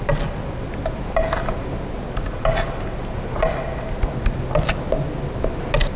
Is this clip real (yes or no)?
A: yes